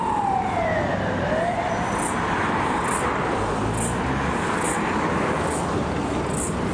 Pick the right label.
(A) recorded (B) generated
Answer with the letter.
A